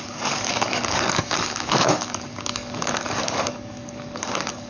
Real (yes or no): no